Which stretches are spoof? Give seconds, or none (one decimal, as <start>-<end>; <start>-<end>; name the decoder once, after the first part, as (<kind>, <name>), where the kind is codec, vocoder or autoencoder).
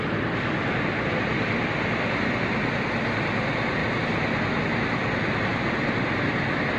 1.1-1.6 (vocoder, BigVGAN v2); 5.5-6.8